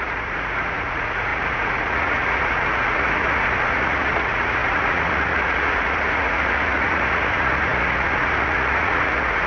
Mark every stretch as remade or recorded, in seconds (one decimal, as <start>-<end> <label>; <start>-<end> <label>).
0.0-9.5 remade